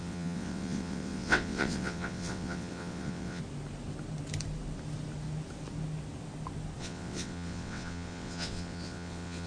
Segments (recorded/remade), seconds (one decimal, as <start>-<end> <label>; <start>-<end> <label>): 0.0-3.4 remade; 3.4-6.8 recorded; 6.8-9.5 remade